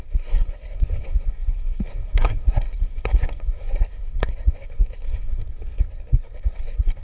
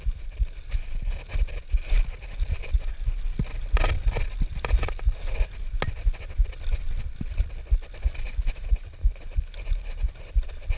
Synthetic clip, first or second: first